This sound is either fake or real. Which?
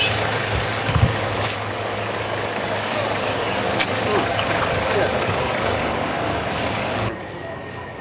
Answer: fake